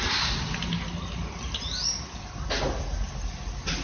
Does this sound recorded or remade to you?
recorded